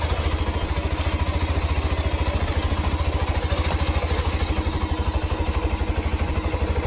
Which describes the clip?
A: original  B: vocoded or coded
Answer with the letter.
A